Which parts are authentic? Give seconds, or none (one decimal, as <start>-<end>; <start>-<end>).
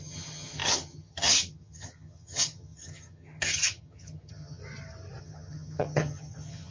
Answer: 4.6-5.2